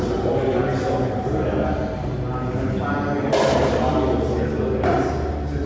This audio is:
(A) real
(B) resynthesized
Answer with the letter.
A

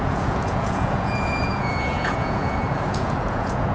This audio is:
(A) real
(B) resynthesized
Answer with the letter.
B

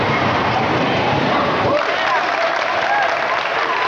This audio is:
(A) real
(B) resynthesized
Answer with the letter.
A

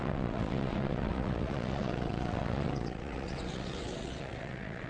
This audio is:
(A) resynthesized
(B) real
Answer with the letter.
A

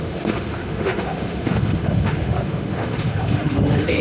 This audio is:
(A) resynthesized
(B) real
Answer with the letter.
A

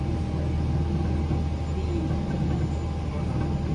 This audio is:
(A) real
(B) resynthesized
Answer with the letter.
A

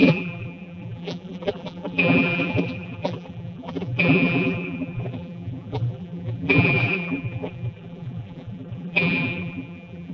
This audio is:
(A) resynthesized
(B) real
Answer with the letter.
A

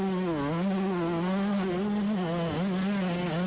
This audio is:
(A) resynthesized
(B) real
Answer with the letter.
B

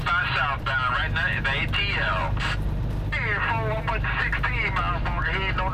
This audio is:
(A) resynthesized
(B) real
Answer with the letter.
B